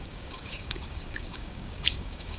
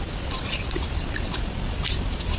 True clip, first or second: second